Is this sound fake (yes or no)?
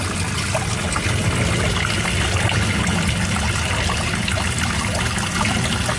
no